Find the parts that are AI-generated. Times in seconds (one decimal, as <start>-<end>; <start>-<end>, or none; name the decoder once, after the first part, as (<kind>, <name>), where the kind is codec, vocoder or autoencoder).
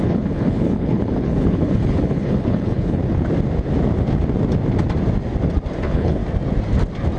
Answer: 0.0-3.0 (codec, HILCodec); 5.8-6.2